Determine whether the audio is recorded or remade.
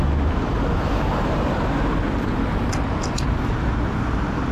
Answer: recorded